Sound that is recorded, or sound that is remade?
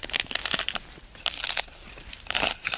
recorded